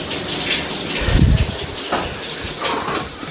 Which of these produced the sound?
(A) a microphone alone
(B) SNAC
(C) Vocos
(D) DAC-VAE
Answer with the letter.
A